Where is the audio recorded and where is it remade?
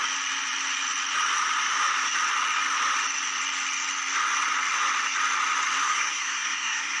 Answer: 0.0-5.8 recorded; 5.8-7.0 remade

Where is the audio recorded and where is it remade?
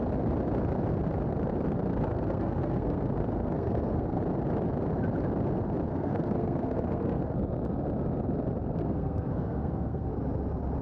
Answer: 0.0-1.9 recorded; 1.9-4.2 remade; 4.2-5.9 recorded; 5.9-7.2 remade; 7.2-8.8 recorded; 8.8-10.1 remade; 10.1-10.8 recorded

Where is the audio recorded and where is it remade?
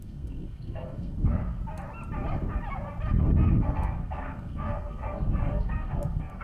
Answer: 0.0-1.6 remade; 1.6-3.2 recorded; 3.2-6.4 remade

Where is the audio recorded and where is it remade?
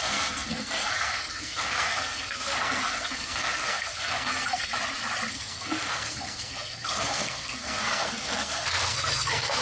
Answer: 0.0-4.7 remade; 4.7-5.3 recorded; 5.3-9.6 remade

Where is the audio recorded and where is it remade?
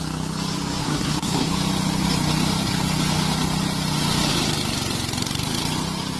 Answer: 0.0-0.8 recorded; 0.8-1.5 remade; 1.5-6.2 recorded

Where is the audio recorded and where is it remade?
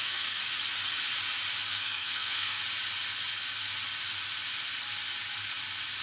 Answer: 0.0-0.4 remade; 0.4-1.7 recorded; 1.7-2.6 remade; 2.6-6.0 recorded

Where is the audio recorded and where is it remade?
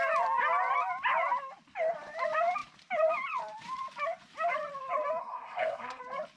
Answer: 0.0-5.2 recorded; 5.2-6.0 remade; 6.0-6.4 recorded